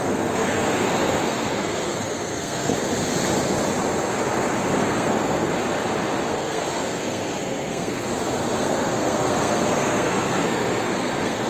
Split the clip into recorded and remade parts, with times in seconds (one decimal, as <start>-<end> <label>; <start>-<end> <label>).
0.0-2.7 remade; 2.7-4.8 recorded; 4.8-5.5 remade; 5.5-6.3 recorded; 6.3-8.1 remade; 8.1-8.6 recorded; 8.6-11.5 remade